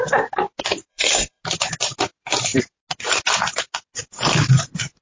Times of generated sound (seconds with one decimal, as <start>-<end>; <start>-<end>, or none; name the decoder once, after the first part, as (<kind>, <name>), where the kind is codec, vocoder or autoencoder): 0.9-1.4 (codec, SNAC)